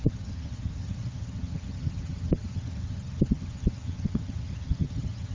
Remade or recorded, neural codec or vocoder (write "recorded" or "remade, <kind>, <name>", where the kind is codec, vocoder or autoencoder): remade, vocoder, HiFi-GAN